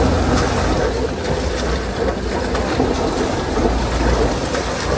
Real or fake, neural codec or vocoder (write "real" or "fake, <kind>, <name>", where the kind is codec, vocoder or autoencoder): real